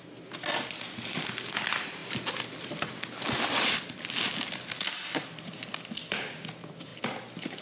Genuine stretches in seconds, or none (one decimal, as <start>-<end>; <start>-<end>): 0.0-7.6